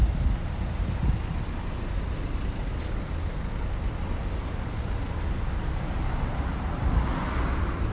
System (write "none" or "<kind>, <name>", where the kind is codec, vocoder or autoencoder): none